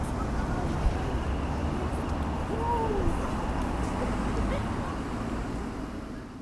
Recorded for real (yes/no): yes